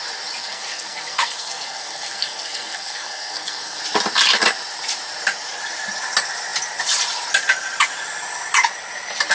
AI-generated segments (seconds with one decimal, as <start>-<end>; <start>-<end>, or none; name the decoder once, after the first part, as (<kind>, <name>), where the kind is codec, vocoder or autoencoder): 0.4-3.8 (codec, SNAC)

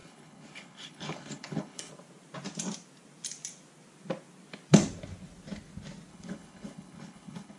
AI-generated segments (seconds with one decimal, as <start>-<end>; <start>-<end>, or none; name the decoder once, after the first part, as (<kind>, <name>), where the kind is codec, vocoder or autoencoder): 0.0-1.9 (codec, HILCodec); 6.1-7.6

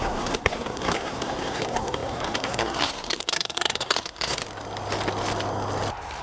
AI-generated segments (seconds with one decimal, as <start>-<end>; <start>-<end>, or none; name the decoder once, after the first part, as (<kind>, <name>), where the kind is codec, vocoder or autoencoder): 0.0-4.4 (codec, SNAC)

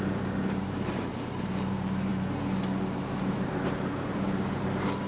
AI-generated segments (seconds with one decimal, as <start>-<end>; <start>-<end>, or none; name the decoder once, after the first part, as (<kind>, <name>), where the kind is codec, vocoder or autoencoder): 0.0-2.1 (vocoder, BigVGAN v2); 3.0-5.1

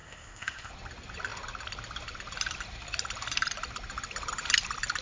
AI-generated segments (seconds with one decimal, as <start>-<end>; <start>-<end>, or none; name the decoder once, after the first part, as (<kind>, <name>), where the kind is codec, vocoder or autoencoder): 0.0-0.7 (codec, ZipCodec)

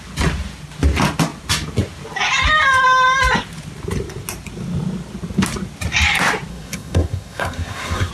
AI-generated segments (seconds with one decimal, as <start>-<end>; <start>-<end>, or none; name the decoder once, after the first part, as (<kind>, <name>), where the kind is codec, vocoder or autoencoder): 6.5-8.1 (codec, SNAC)